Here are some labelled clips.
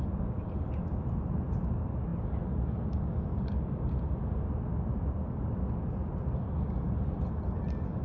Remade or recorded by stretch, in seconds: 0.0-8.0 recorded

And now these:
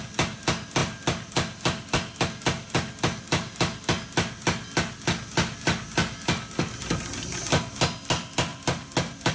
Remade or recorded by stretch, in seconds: 0.0-9.3 recorded

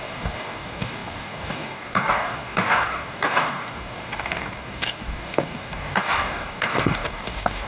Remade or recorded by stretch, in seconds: 0.0-7.7 remade

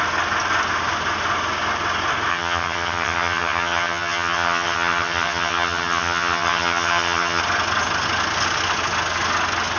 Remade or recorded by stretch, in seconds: 0.0-2.3 recorded; 2.3-7.4 remade; 7.4-9.8 recorded